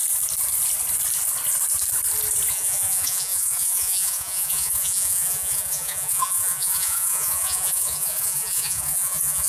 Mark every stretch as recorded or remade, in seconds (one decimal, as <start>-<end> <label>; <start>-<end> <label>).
0.0-2.5 recorded; 2.5-9.5 remade